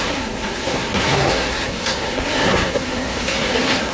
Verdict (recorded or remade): remade